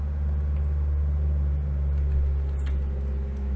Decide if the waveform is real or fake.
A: real